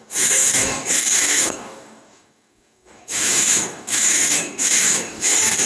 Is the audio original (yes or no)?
no